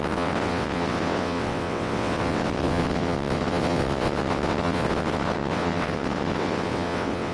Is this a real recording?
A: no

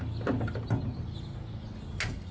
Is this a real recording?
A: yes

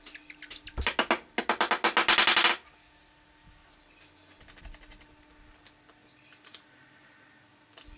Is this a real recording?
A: yes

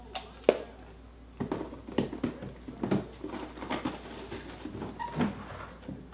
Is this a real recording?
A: yes